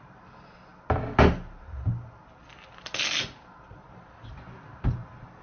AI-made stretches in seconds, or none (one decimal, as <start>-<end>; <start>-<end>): none